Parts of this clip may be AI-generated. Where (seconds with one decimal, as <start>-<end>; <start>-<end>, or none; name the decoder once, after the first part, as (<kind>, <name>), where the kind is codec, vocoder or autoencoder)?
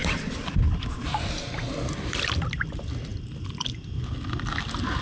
none